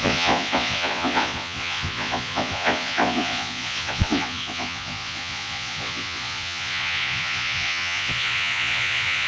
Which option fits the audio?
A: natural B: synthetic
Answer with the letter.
B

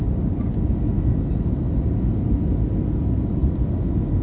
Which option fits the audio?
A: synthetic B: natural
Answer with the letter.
B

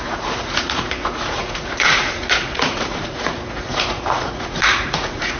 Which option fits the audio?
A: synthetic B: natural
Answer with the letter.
A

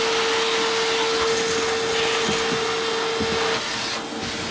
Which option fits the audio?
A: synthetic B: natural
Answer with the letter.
B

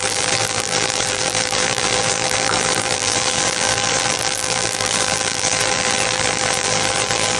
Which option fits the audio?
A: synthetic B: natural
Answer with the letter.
A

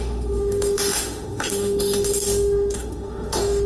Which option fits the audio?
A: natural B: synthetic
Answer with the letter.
B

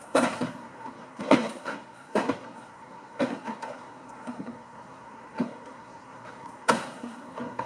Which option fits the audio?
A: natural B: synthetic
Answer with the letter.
B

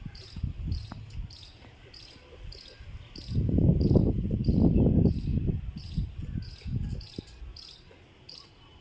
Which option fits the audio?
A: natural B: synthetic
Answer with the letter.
A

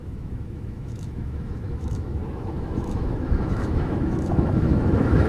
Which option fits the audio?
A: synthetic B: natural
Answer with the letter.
A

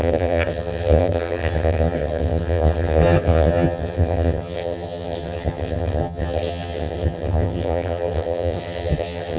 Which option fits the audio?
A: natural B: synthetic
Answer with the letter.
B